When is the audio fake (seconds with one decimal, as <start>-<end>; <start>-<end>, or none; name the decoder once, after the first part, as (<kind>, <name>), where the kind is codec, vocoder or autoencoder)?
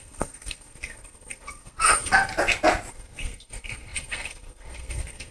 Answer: 0.0-2.3 (codec, SNAC); 2.9-5.3